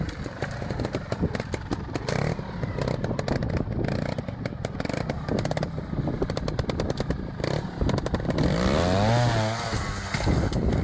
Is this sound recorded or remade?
recorded